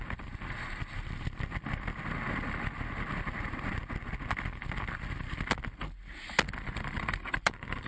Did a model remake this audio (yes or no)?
no